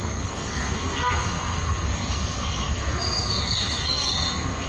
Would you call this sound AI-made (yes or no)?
yes